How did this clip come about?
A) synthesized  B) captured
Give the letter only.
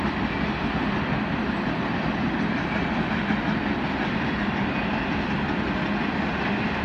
B